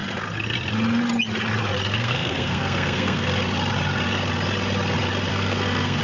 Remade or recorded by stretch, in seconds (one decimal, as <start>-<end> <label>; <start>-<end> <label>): 0.0-1.9 recorded; 1.9-3.3 remade; 3.3-5.3 recorded; 5.3-6.0 remade